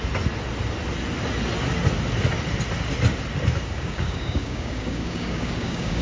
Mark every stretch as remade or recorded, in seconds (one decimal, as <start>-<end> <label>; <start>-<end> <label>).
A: 0.0-3.6 recorded; 3.6-6.0 remade